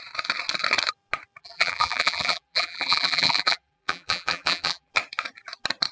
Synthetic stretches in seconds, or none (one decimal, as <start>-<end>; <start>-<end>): 1.4-4.9